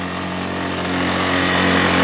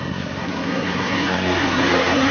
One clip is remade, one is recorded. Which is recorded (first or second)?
first